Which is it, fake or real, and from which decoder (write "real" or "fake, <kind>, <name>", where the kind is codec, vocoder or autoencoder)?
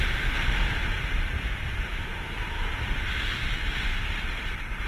real